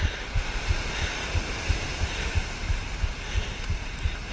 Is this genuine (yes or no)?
yes